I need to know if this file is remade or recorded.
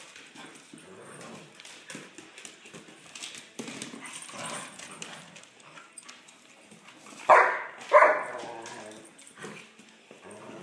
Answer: recorded